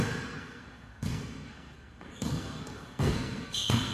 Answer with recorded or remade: remade